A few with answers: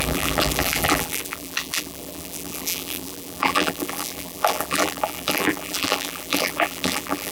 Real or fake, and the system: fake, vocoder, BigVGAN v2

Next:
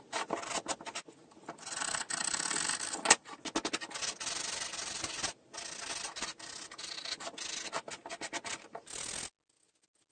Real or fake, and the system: real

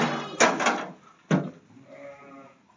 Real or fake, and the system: real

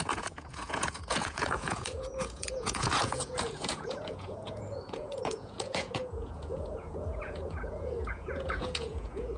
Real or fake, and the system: fake, vocoder, Vocos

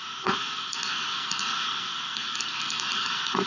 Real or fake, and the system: fake, codec, SNAC